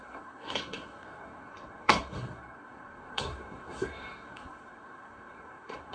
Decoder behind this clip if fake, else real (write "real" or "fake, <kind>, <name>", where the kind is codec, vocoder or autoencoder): fake, codec, SNAC